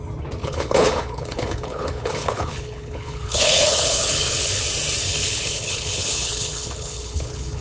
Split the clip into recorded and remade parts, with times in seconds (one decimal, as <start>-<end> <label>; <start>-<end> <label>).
0.0-0.4 recorded; 0.4-4.6 remade; 4.6-5.0 recorded; 5.0-7.6 remade